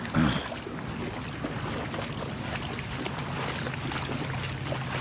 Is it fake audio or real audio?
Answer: real